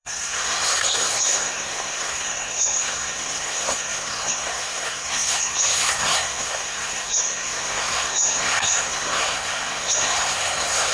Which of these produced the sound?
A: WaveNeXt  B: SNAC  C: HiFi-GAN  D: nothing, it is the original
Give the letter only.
B